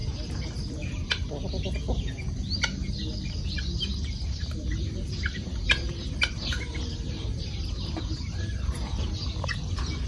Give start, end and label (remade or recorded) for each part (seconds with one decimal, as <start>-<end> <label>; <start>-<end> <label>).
0.0-1.1 remade; 1.1-3.9 recorded; 3.9-8.8 remade; 8.8-10.1 recorded